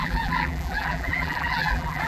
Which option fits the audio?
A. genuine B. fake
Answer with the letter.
B